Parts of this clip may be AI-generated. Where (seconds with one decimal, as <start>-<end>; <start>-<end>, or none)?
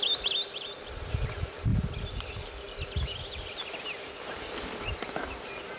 none